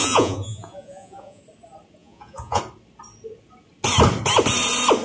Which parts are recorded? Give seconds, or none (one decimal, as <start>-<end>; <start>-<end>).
1.4-2.0; 2.6-5.0